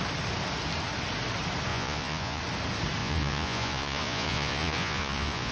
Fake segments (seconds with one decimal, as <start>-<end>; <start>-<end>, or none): 1.7-2.4; 3.0-5.5